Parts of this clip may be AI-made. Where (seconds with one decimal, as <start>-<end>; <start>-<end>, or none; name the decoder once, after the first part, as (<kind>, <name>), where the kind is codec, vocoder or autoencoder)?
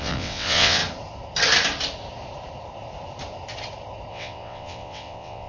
0.0-0.8 (vocoder, WaveNeXt); 4.1-5.5